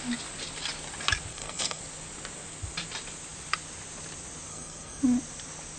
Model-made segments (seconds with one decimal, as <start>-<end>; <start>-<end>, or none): 1.3-1.8; 4.5-5.0